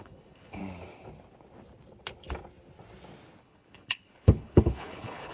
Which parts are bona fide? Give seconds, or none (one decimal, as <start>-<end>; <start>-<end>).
0.6-3.4